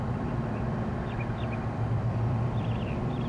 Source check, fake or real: fake